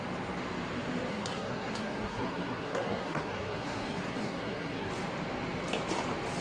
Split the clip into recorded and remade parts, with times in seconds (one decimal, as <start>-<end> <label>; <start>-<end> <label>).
0.0-1.1 recorded; 1.1-4.9 remade; 4.9-6.4 recorded